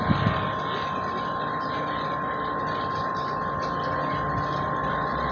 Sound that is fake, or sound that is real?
real